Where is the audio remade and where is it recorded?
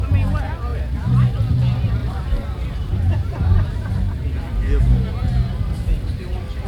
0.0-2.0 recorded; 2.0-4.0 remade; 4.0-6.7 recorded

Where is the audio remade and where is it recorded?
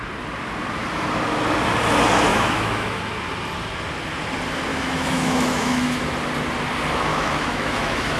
0.0-2.3 recorded; 2.3-3.0 remade; 3.0-4.7 recorded; 4.7-6.0 remade; 6.0-7.1 recorded; 7.1-8.2 remade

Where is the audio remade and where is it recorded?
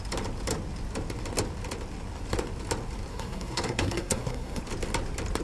0.0-3.1 recorded; 3.1-4.6 remade; 4.6-5.4 recorded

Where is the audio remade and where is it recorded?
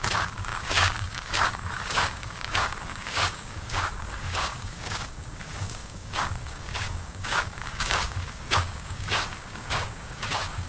0.0-10.7 remade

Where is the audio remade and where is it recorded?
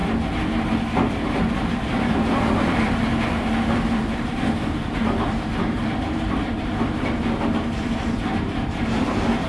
0.0-1.6 recorded; 1.6-9.5 remade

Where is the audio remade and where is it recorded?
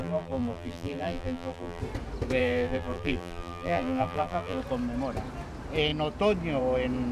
0.0-1.8 remade; 1.8-2.4 recorded; 2.4-4.6 remade; 4.6-7.1 recorded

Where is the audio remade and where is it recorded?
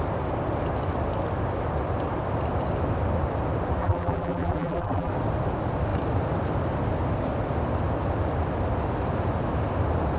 0.0-3.8 recorded; 3.8-5.1 remade; 5.1-10.2 recorded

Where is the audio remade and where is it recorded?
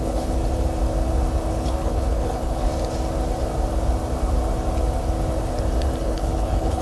0.0-0.4 remade; 0.4-1.5 recorded; 1.5-2.7 remade; 2.7-6.0 recorded; 6.0-6.8 remade